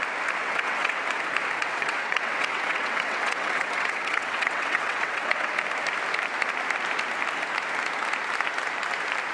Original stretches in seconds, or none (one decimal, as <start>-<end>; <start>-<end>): 0.0-0.4; 1.0-1.6; 5.5-9.3